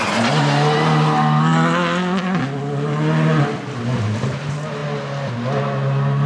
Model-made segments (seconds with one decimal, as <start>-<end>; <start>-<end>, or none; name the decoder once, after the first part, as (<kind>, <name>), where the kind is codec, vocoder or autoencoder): none